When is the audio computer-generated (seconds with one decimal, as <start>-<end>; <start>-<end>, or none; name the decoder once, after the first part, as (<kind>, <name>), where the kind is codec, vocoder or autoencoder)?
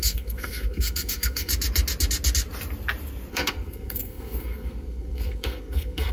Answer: 0.0-1.5 (codec, SNAC); 3.3-6.1